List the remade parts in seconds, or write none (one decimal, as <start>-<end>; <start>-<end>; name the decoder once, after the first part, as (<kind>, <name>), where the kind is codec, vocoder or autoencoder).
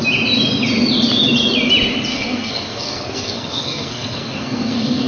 2.1-5.1 (codec, SNAC)